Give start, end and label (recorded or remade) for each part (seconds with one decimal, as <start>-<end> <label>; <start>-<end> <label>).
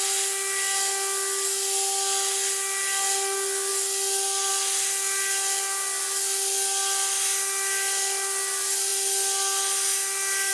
0.0-10.5 recorded